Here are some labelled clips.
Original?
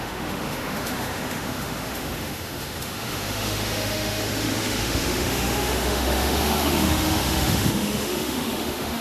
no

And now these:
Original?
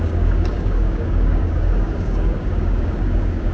no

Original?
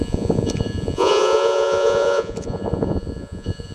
no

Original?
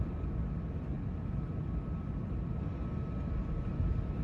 yes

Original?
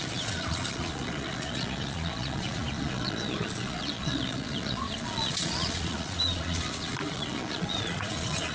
no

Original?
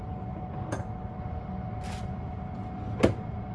yes